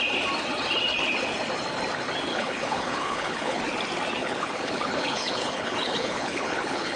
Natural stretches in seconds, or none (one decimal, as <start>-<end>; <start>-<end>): 0.0-2.3; 3.6-4.2